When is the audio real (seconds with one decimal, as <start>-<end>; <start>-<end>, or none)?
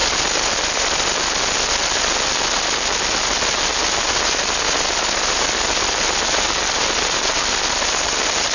0.0-8.5